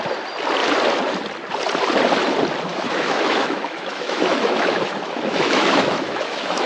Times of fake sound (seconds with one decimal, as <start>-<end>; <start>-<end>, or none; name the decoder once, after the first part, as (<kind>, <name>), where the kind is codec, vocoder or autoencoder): 2.7-6.7 (autoencoder, DAC-VAE)